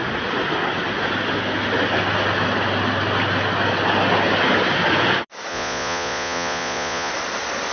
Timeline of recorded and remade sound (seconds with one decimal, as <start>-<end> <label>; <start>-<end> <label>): 0.0-5.5 recorded; 5.5-7.1 remade; 7.1-7.7 recorded

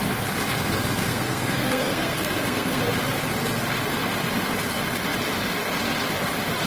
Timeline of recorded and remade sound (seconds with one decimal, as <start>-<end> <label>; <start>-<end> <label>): 0.0-1.1 recorded; 1.1-2.8 remade; 2.8-6.7 recorded

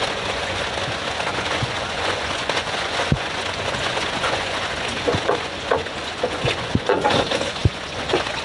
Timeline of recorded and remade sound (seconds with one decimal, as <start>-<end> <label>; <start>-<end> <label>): 0.0-8.4 remade

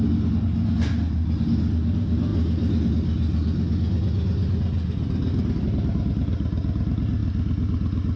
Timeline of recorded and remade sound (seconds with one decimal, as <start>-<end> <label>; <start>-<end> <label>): 0.0-8.2 recorded

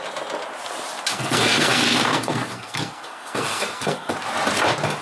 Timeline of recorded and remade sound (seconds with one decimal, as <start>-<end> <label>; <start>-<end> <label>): 0.0-1.1 recorded; 1.1-4.1 remade; 4.1-5.0 recorded

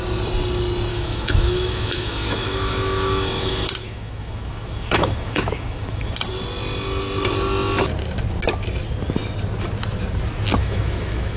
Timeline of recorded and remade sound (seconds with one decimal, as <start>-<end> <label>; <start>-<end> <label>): 0.0-0.9 recorded; 0.9-6.1 remade; 6.1-10.6 recorded; 10.6-11.4 remade

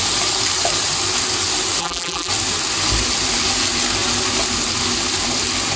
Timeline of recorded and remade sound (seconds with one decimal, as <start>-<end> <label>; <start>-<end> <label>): 0.0-1.8 recorded; 1.8-2.3 remade; 2.3-5.8 recorded